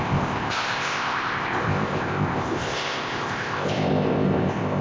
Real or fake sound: fake